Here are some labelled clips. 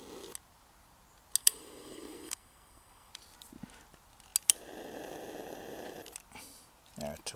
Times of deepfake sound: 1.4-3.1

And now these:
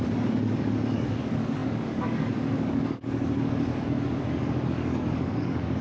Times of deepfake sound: 0.0-5.8

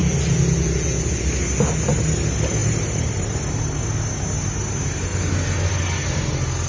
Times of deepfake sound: 2.6-3.4

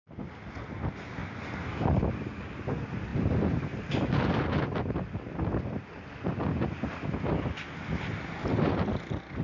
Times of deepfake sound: none

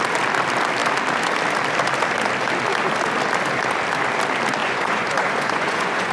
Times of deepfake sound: 4.6-6.1